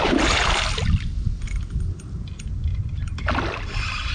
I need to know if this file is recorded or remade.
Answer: recorded